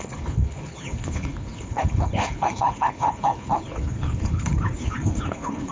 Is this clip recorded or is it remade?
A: remade